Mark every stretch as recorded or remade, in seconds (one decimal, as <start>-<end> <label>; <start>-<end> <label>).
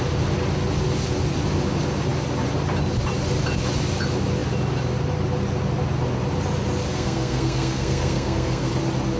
0.0-6.9 recorded; 6.9-8.7 remade; 8.7-9.2 recorded